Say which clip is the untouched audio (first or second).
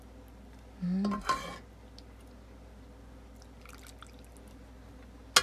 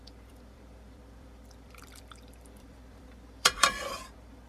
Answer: first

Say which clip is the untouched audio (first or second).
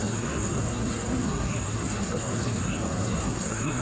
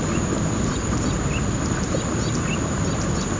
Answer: second